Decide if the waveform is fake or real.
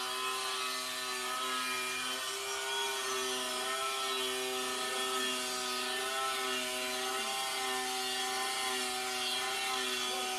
real